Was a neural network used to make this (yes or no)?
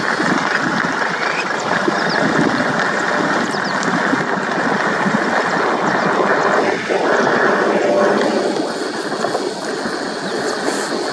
no